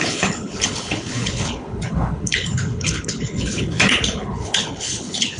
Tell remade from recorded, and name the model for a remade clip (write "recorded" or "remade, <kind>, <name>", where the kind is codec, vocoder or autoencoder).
remade, codec, HILCodec